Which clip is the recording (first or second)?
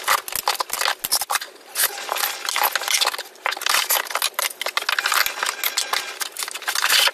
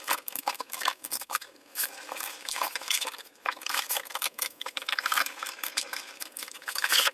first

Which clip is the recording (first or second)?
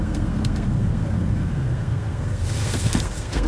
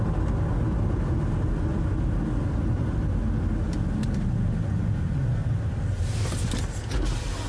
second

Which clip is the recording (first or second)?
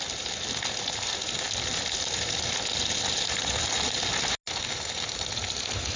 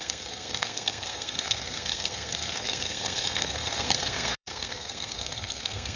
first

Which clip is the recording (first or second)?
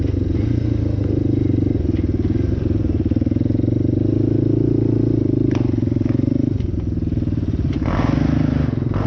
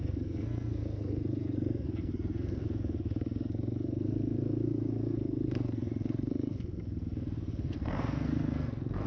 first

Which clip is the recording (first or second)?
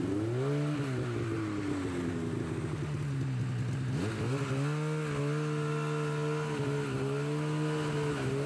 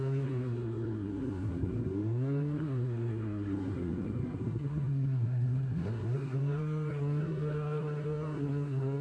first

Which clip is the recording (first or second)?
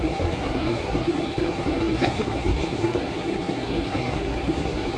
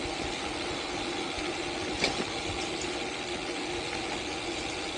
second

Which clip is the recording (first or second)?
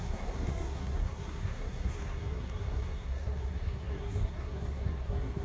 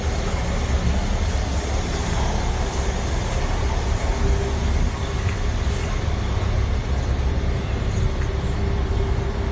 second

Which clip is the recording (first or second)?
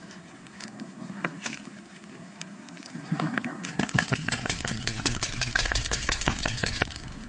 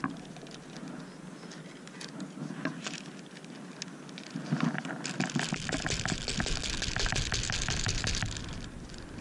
second